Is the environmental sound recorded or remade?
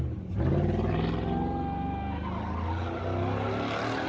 recorded